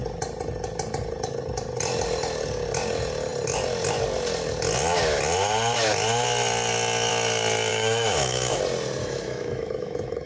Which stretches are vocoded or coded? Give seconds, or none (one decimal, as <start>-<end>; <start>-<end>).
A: 7.7-8.6; 9.0-10.3